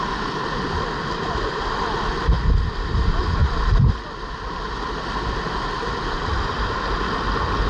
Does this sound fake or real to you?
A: real